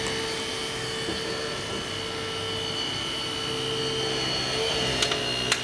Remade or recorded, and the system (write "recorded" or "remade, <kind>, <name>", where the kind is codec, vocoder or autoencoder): recorded